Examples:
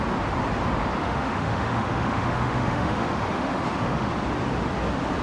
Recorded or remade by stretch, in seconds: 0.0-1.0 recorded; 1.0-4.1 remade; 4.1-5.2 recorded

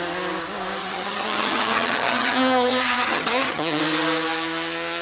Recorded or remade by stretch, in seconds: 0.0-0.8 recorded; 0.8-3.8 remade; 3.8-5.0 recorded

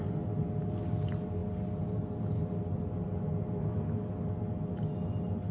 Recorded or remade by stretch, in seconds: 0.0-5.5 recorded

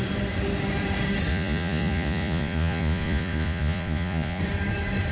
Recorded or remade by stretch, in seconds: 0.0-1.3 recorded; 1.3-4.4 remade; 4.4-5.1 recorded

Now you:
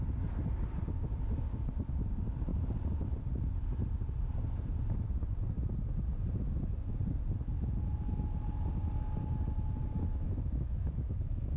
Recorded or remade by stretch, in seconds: 0.0-9.8 recorded; 9.8-11.1 remade; 11.1-11.6 recorded

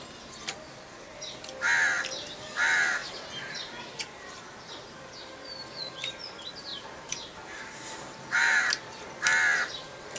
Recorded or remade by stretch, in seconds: 0.0-3.0 recorded; 3.0-4.7 remade; 4.7-6.7 recorded; 6.7-9.1 remade; 9.1-10.2 recorded